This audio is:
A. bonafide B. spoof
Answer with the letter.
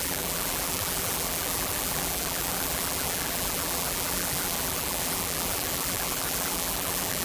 B